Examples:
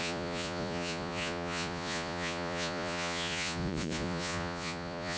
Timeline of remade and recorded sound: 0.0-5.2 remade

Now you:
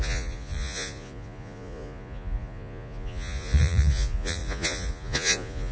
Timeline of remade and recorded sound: 0.0-5.7 remade

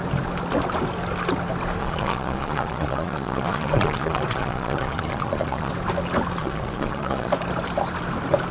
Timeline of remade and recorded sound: 0.0-1.8 recorded; 1.8-5.7 remade; 5.7-6.4 recorded; 6.4-7.3 remade; 7.3-8.5 recorded